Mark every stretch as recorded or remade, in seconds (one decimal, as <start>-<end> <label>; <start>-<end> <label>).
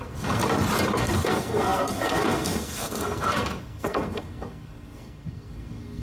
0.0-0.4 remade; 0.4-1.0 recorded; 1.0-6.0 remade